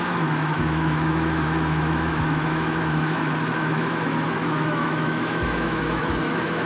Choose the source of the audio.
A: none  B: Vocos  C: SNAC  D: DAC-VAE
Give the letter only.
D